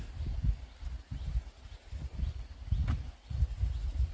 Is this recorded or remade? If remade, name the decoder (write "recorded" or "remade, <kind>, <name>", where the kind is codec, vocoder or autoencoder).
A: recorded